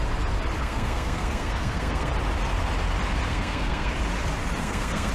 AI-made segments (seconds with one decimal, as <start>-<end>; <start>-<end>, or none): 0.6-2.1; 3.3-3.9; 4.6-5.1